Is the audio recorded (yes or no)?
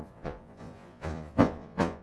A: no